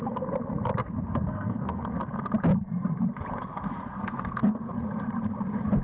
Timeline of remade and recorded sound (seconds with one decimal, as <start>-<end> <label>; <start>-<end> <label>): 0.0-0.8 recorded; 0.8-1.8 remade; 1.8-3.5 recorded; 3.5-4.7 remade; 4.7-5.8 recorded